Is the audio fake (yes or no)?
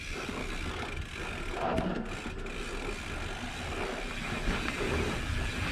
no